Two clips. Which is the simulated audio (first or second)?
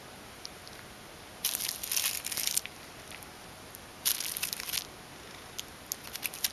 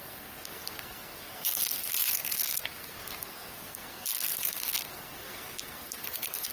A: second